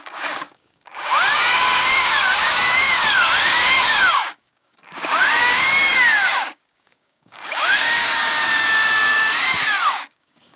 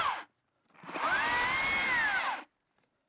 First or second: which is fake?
first